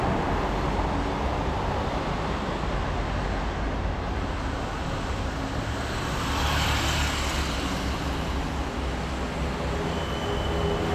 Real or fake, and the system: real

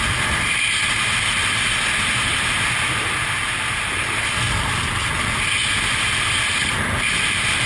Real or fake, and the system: real